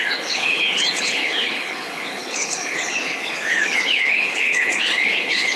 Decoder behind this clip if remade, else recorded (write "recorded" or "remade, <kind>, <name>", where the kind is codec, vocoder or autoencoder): remade, codec, HILCodec